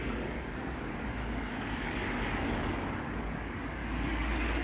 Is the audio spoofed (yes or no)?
yes